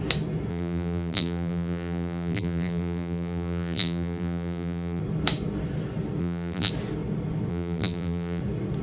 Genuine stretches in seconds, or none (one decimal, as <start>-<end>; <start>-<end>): 0.0-0.5; 5.0-6.2; 6.7-7.5; 8.4-8.8